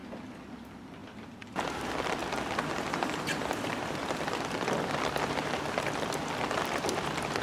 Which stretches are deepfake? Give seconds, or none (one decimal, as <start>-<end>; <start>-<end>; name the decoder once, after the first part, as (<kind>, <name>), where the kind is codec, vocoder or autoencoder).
0.5-1.0 (vocoder, BigVGAN v2); 1.8-2.2; 2.9-7.4